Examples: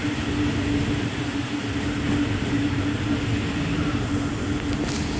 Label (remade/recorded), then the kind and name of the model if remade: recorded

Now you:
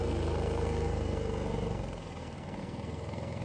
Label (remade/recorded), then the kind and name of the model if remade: remade, codec, SNAC